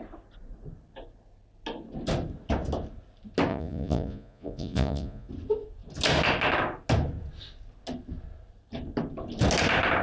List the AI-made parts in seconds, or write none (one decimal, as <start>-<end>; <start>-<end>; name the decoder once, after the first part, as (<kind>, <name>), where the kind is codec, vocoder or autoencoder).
3.5-5.3 (vocoder, Vocos)